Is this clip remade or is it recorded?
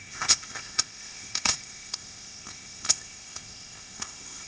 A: remade